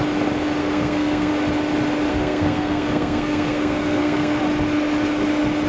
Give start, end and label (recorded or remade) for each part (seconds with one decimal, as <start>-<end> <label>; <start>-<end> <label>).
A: 0.0-0.6 recorded; 0.6-1.3 remade; 1.3-2.1 recorded; 2.1-4.4 remade; 4.4-5.7 recorded